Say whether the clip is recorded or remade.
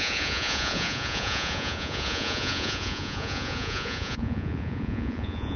remade